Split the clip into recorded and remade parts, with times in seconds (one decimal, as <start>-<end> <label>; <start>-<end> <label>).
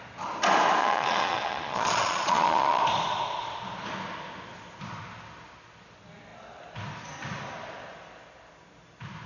0.0-0.8 recorded; 0.8-2.8 remade; 2.8-9.3 recorded